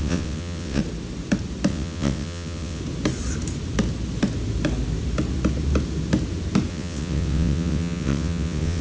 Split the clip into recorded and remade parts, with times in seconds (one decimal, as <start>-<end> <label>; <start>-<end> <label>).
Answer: 0.0-0.8 remade; 0.8-1.7 recorded; 1.7-2.8 remade; 2.8-6.7 recorded; 6.7-8.8 remade